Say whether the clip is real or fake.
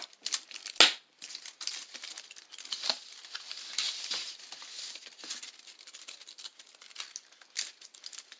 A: real